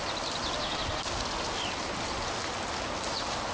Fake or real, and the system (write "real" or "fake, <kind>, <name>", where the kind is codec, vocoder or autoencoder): real